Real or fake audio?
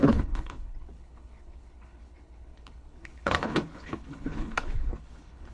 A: fake